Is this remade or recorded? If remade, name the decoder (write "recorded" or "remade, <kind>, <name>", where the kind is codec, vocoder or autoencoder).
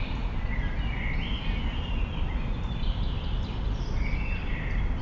recorded